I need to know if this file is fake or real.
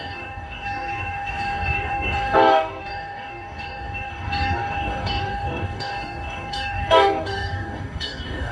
fake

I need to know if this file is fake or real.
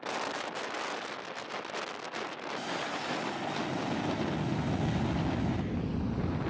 real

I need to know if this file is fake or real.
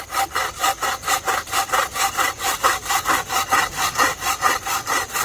fake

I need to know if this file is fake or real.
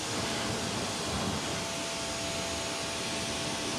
real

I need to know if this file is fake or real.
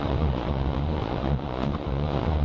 fake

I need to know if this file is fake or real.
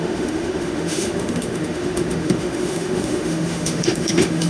fake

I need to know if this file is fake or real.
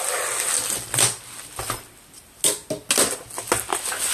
real